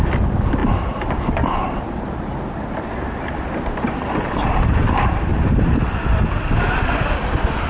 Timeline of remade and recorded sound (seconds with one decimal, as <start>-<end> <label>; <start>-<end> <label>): 0.0-0.6 recorded; 0.6-4.8 remade; 4.8-5.3 recorded; 5.3-5.8 remade; 5.8-7.7 recorded